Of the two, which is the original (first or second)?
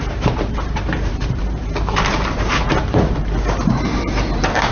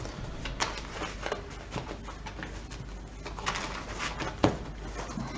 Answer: second